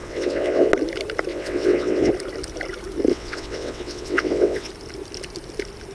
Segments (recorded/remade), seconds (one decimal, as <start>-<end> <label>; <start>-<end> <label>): 0.0-0.7 remade; 0.7-1.3 recorded; 1.3-2.1 remade; 2.1-3.1 recorded; 3.1-4.7 remade; 4.7-5.9 recorded